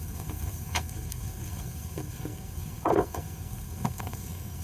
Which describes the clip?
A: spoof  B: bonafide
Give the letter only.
A